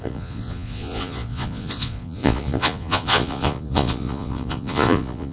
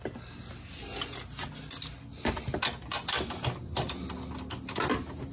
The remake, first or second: first